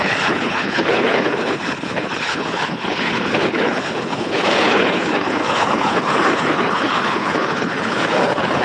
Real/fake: fake